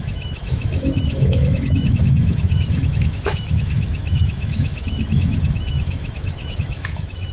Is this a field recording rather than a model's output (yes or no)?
no